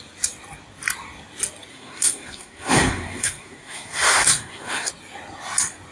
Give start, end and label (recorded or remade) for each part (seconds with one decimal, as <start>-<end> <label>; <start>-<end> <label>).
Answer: 0.0-1.7 recorded; 1.7-4.9 remade; 4.9-5.9 recorded